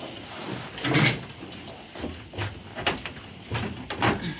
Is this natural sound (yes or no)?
yes